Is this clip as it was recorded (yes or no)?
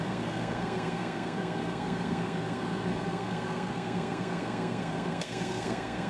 no